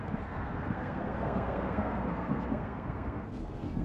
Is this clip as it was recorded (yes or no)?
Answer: no